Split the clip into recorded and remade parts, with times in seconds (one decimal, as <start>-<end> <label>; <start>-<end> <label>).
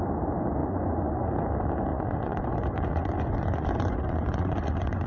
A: 0.0-0.6 recorded; 0.6-1.3 remade; 1.3-1.9 recorded; 1.9-5.1 remade